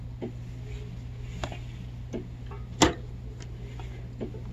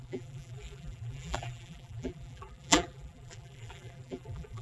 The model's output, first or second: second